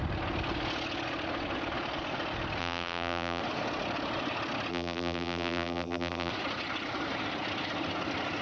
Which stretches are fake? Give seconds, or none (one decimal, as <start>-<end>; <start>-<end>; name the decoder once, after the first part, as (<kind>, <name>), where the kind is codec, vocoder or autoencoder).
2.6-3.4 (vocoder, BigVGAN v2); 4.7-6.3